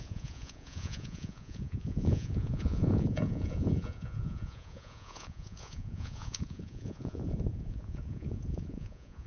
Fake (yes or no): yes